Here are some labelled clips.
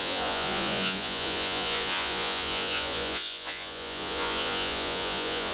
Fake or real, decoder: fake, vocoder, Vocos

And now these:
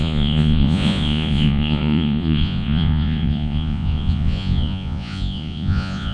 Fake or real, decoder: fake, vocoder, Vocos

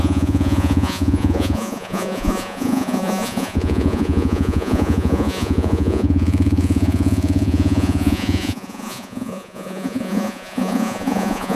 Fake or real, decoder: fake, vocoder, Vocos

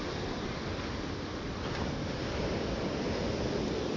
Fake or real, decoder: real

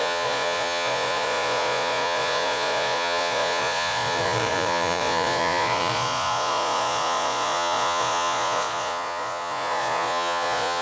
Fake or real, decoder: fake, vocoder, Vocos